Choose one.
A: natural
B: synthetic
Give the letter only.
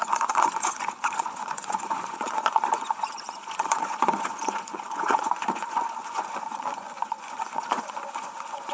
B